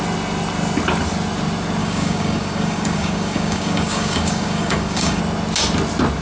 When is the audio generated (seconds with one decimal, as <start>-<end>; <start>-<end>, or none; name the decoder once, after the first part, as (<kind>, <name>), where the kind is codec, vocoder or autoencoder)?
1.8-5.2 (codec, DAC)